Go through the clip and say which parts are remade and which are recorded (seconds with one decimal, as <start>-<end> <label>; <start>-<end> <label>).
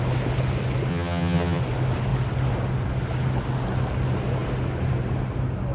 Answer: 0.0-0.9 recorded; 0.9-1.6 remade; 1.6-5.7 recorded